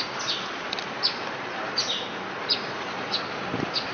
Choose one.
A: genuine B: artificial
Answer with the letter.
A